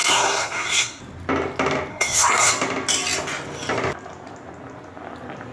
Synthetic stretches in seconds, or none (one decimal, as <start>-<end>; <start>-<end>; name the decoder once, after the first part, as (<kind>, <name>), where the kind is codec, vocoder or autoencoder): 0.0-1.0 (codec, SNAC); 1.9-2.5